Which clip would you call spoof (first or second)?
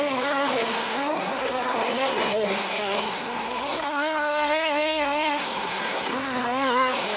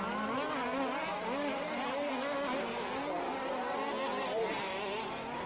first